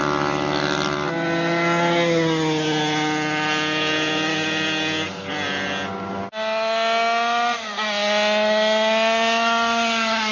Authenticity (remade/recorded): recorded